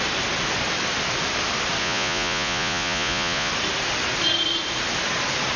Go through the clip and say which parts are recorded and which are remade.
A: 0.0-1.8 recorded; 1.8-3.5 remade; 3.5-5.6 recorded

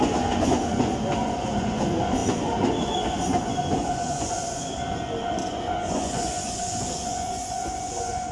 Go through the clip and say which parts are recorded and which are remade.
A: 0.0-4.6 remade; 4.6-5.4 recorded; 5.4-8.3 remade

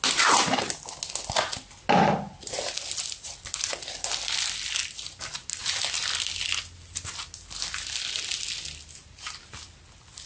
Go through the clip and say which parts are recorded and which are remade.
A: 0.0-10.3 recorded

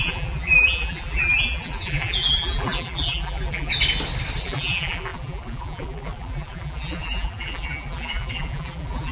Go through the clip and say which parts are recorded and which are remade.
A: 0.0-3.7 remade; 3.7-4.4 recorded; 4.4-9.1 remade

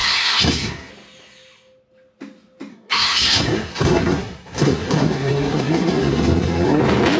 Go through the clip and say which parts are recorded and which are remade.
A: 0.0-0.9 remade; 0.9-2.7 recorded; 2.7-6.8 remade; 6.8-7.2 recorded